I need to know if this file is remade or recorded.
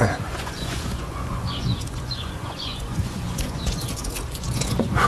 remade